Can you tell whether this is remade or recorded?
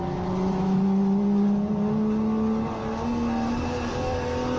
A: recorded